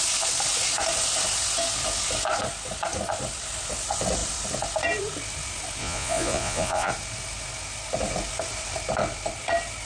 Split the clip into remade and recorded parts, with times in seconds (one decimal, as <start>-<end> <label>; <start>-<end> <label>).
0.0-5.8 recorded; 5.8-6.9 remade; 6.9-9.9 recorded